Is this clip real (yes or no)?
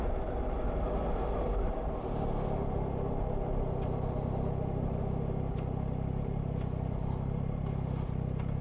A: yes